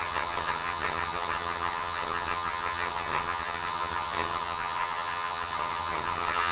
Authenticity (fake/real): fake